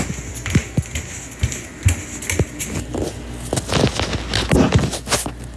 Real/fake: real